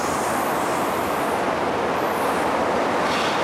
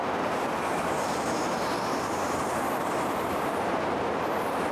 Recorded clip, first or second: first